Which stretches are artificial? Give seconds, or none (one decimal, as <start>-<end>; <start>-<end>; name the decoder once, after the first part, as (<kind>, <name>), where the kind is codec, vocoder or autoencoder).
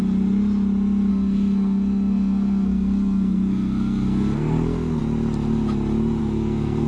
1.1-5.0 (codec, SNAC); 6.2-6.9